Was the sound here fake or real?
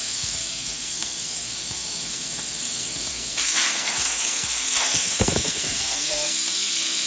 fake